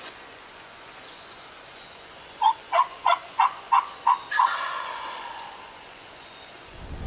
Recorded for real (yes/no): no